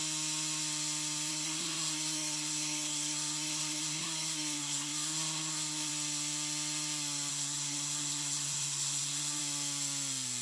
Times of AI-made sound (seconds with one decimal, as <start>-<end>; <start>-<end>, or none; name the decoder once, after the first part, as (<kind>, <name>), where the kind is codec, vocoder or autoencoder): 1.3-5.9 (codec, SNAC); 7.3-9.4